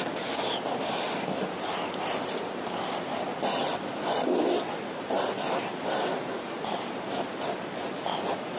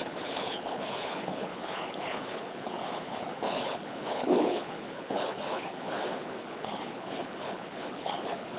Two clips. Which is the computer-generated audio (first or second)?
second